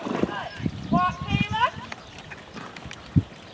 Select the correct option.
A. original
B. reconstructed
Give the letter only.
A